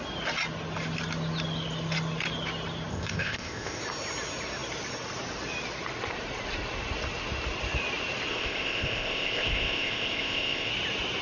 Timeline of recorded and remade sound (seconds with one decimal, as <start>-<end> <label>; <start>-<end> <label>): 0.0-2.9 recorded; 2.9-3.8 remade; 3.8-8.3 recorded; 8.3-10.7 remade; 10.7-11.2 recorded